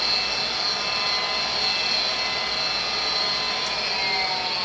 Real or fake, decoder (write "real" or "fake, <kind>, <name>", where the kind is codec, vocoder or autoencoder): real